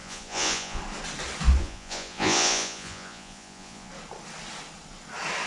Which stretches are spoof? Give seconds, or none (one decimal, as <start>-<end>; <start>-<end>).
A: 0.0-0.8; 1.6-3.9